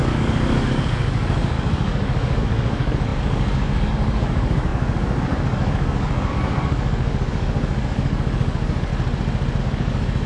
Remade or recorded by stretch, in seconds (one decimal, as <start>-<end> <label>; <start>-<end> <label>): 0.0-8.9 remade; 8.9-9.6 recorded; 9.6-10.3 remade